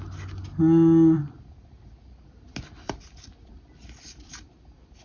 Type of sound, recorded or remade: recorded